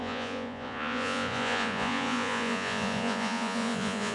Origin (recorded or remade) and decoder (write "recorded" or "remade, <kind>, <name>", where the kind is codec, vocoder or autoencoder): remade, vocoder, Vocos